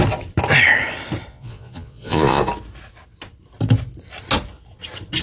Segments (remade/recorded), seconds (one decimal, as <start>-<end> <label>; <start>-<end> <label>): 0.0-1.3 recorded; 1.3-2.4 remade; 2.4-5.2 recorded